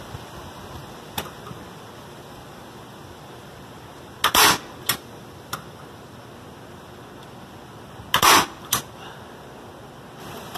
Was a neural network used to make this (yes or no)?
no